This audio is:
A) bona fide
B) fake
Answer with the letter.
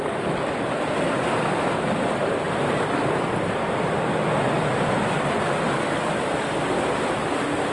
A